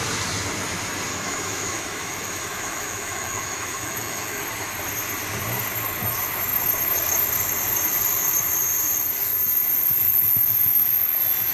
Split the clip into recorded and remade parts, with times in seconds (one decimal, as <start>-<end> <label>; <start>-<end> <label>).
0.0-1.1 recorded; 1.1-4.4 remade; 4.4-11.5 recorded